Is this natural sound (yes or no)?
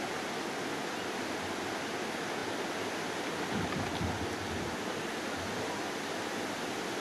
yes